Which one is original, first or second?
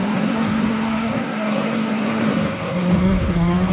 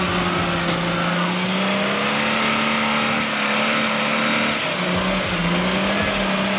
second